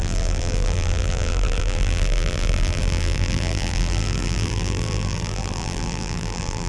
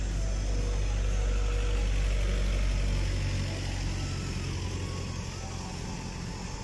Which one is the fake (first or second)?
first